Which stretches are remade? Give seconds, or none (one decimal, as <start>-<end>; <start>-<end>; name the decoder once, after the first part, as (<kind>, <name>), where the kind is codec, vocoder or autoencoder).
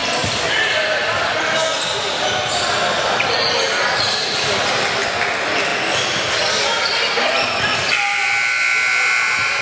none